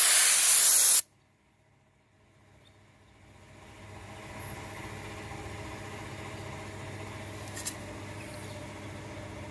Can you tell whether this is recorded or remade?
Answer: recorded